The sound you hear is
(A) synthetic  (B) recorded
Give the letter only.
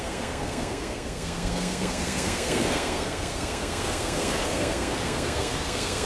A